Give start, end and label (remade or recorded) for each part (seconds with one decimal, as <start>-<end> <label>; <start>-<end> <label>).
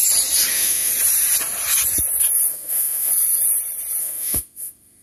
0.0-0.5 recorded; 0.5-0.9 remade; 0.9-2.5 recorded; 2.5-3.1 remade; 3.1-4.0 recorded; 4.0-5.0 remade